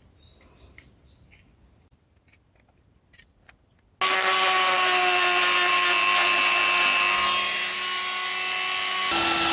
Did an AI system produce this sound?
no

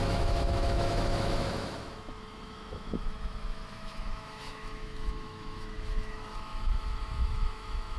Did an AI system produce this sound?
yes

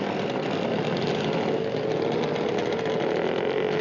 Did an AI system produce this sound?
no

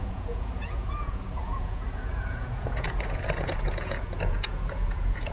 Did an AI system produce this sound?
yes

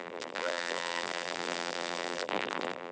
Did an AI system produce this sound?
yes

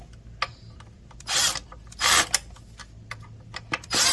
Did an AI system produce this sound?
no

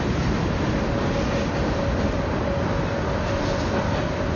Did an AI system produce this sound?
no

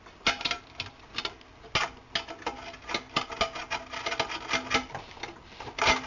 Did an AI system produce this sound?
no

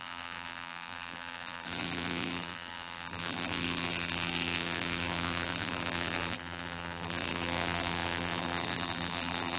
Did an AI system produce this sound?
yes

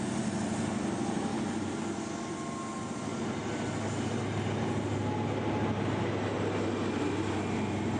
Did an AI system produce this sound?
no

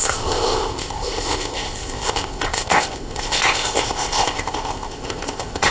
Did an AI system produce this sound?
yes